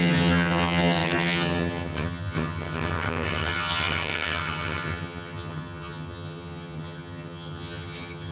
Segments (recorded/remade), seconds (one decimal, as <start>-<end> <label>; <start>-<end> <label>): 0.0-8.3 remade

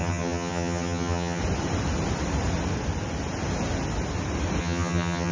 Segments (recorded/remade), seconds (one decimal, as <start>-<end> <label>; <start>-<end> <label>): 0.0-1.4 remade; 1.4-4.6 recorded; 4.6-5.3 remade

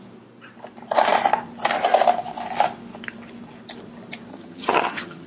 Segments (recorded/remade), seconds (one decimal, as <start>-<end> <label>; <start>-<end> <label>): 0.0-4.3 recorded; 4.3-5.3 remade

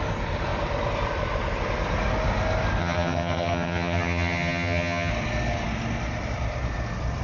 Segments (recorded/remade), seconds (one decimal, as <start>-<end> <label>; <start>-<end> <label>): 0.0-2.8 recorded; 2.8-5.1 remade; 5.1-7.2 recorded

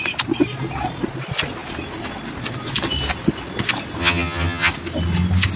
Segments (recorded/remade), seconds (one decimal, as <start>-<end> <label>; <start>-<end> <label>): 0.0-4.0 recorded; 4.0-4.7 remade; 4.7-5.6 recorded

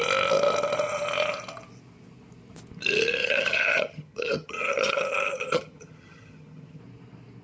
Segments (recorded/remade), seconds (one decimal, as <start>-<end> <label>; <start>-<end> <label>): 0.0-3.2 recorded; 3.2-6.8 remade; 6.8-7.4 recorded

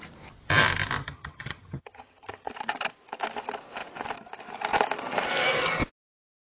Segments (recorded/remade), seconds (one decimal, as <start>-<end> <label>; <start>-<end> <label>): 0.0-1.0 recorded; 1.0-2.5 remade; 2.5-6.6 recorded

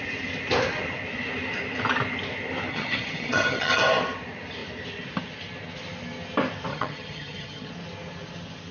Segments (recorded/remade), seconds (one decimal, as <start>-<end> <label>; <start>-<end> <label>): 0.0-2.7 recorded; 2.7-3.8 remade; 3.8-6.7 recorded; 6.7-7.7 remade; 7.7-8.7 recorded